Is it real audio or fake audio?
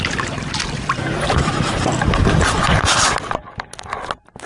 real